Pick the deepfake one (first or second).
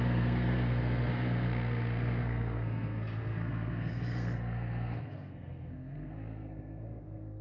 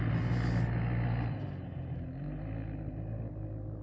first